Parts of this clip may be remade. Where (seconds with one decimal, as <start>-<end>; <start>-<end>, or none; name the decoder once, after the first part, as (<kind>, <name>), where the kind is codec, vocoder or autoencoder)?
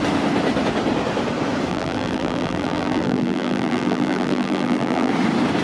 1.7-5.1 (vocoder, BigVGAN v2)